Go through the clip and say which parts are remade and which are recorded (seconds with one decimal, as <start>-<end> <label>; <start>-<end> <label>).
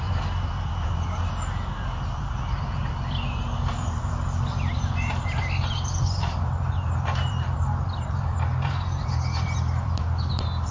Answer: 0.0-10.7 remade